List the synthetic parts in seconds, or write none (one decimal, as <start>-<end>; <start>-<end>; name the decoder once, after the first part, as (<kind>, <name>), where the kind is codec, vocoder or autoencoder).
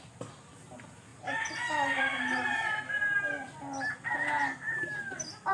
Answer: none